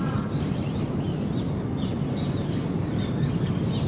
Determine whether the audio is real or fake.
real